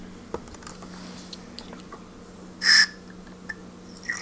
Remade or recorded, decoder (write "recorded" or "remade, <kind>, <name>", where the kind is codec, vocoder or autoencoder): recorded